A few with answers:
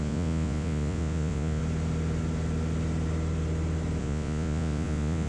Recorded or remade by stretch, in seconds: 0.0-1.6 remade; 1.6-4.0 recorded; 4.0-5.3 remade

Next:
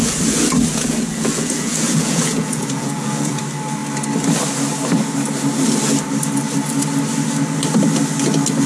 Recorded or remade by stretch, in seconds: 0.0-3.4 remade; 3.4-8.7 recorded

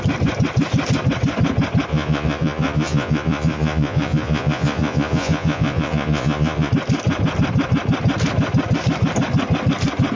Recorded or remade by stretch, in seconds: 0.0-1.9 recorded; 1.9-6.7 remade; 6.7-10.2 recorded

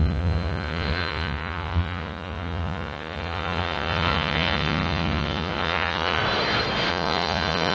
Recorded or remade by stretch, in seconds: 0.0-6.2 remade; 6.2-6.9 recorded; 6.9-7.7 remade

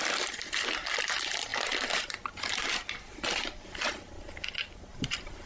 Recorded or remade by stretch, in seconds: 0.0-5.5 recorded